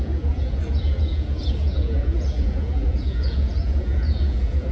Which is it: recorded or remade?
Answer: remade